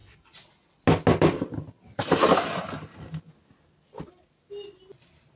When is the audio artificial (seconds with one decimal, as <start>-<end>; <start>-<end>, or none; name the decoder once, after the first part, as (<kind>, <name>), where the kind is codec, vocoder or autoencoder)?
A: none